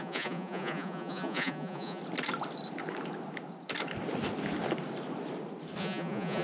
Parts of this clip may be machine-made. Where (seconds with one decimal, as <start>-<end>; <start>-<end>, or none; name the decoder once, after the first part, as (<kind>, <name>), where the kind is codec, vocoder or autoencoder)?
0.0-2.0 (vocoder, Vocos); 5.8-6.4